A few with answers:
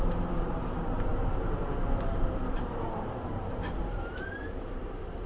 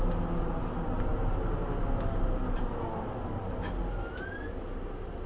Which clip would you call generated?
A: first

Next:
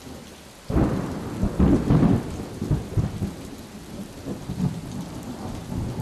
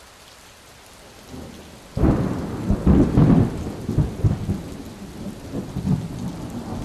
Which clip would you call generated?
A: first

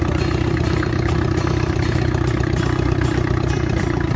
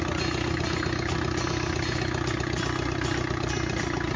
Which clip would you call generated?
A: first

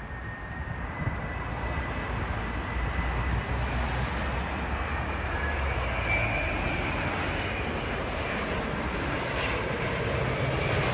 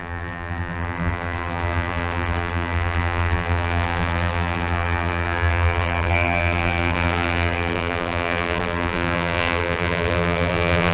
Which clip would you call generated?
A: second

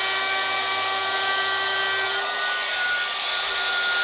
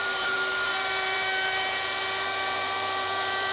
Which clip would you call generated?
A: second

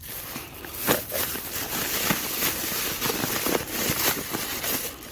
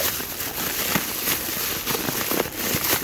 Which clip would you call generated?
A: first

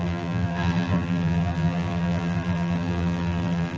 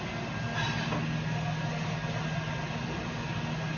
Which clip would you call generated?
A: first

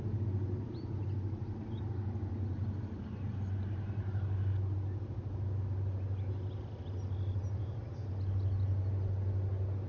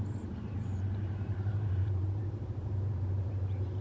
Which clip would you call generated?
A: second